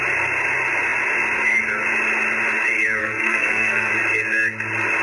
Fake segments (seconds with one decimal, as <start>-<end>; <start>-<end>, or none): 3.0-3.9